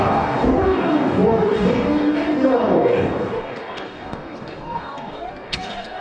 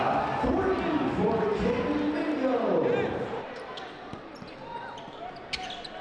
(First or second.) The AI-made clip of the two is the first